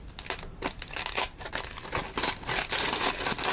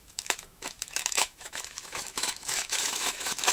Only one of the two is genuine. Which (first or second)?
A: first